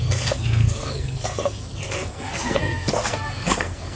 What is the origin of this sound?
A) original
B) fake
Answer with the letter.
B